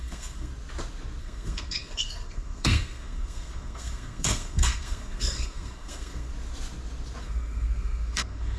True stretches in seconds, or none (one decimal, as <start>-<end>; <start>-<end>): 0.5-1.2; 6.3-7.2